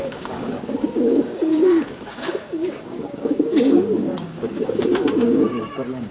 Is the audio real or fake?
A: fake